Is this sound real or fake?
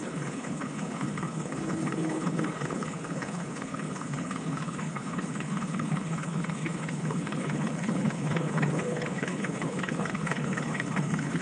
fake